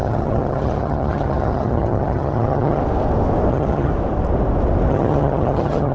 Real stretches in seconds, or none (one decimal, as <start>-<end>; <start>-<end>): 2.8-3.5; 3.9-4.9